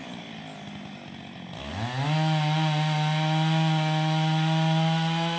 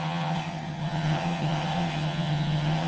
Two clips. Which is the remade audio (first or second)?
second